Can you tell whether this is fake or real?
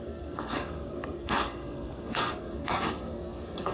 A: fake